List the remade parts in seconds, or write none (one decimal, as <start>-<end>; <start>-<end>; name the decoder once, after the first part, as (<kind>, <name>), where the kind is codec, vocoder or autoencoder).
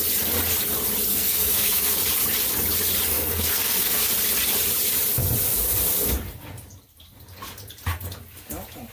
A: 1.1-2.0 (codec, SNAC); 3.1-4.1